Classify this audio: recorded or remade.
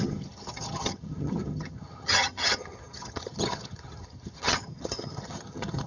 remade